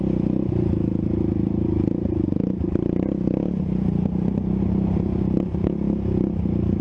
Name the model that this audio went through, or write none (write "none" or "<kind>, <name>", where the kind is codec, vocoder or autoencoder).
vocoder, BigVGAN v2